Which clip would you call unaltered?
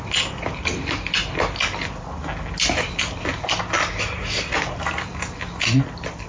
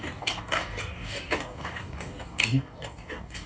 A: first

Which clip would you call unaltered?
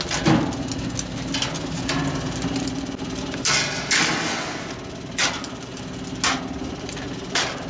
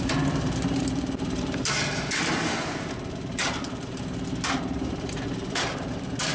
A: first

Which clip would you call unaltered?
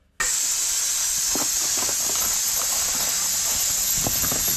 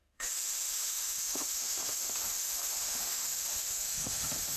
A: first